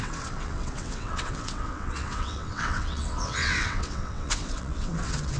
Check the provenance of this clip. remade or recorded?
remade